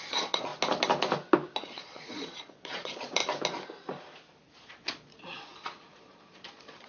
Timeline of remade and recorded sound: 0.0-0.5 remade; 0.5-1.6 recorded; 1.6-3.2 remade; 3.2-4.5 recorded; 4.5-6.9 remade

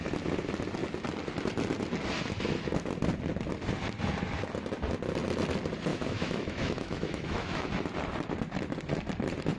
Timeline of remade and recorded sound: 0.0-5.9 recorded; 5.9-7.7 remade; 7.7-9.6 recorded

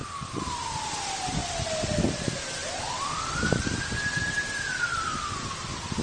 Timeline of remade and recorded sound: 0.0-6.0 recorded